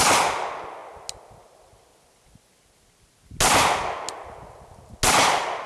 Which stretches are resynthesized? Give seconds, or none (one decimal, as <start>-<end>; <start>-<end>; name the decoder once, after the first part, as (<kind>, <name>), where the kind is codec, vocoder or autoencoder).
none